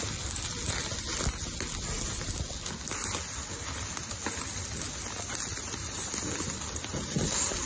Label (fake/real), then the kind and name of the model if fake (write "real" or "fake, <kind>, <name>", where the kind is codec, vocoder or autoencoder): real